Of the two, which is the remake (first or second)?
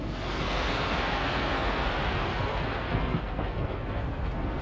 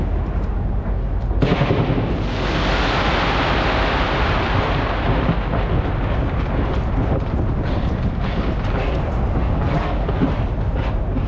first